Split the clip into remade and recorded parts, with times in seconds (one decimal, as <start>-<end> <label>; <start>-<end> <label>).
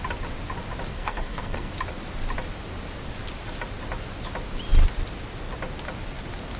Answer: 0.0-0.9 recorded; 0.9-1.7 remade; 1.7-6.6 recorded